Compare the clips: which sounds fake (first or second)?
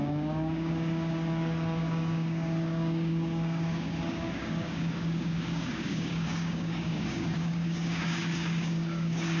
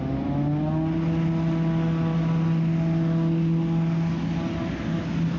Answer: first